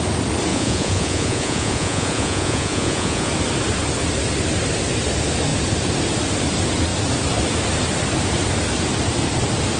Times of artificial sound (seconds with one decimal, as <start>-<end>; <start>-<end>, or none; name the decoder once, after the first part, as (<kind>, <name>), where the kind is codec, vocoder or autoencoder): 0.5-3.3 (vocoder, Vocos)